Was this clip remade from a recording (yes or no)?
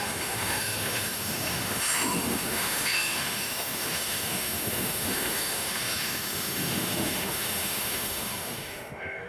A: yes